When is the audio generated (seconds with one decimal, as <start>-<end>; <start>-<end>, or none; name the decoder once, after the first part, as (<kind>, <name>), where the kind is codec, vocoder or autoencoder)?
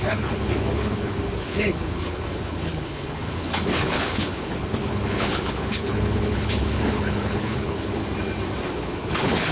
0.0-8.0 (codec, HILCodec); 8.7-9.5